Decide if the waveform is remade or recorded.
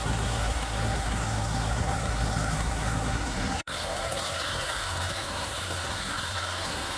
remade